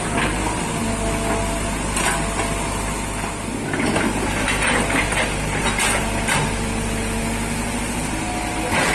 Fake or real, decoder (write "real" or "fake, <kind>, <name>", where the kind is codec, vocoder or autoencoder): real